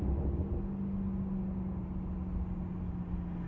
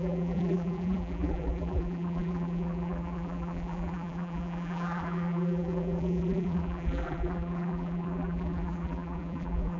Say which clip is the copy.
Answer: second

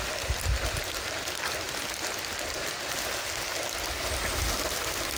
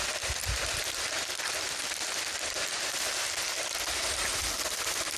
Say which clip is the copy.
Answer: second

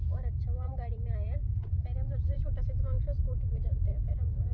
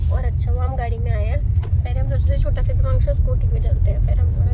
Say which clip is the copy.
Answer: first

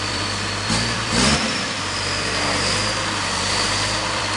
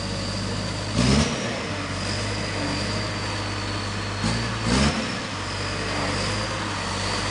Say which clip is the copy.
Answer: first